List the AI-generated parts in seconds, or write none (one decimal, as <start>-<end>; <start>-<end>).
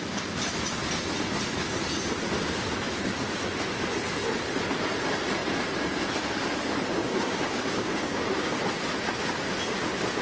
7.0-8.6